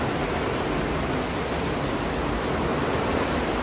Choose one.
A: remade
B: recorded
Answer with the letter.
B